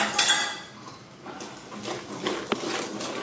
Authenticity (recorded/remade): recorded